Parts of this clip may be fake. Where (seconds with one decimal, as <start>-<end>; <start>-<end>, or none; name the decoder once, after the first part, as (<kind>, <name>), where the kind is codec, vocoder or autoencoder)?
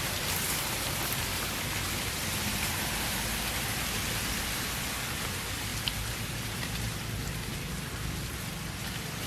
1.3-3.8 (vocoder, BigVGAN v2); 5.7-6.6